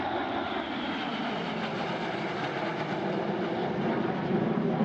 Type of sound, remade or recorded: recorded